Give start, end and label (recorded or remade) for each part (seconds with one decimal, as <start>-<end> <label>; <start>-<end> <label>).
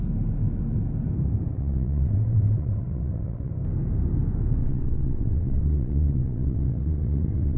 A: 0.0-1.5 recorded; 1.5-3.5 remade; 3.5-4.6 recorded; 4.6-7.6 remade